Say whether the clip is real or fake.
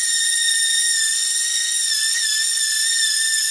real